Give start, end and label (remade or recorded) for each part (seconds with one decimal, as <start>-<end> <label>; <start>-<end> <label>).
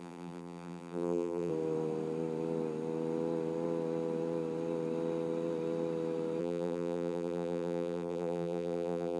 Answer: 0.0-1.5 remade; 1.5-6.4 recorded; 6.4-9.2 remade